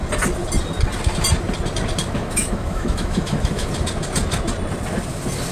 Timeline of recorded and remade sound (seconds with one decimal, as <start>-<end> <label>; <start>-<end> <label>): 0.0-2.0 recorded; 2.0-3.7 remade; 3.7-5.5 recorded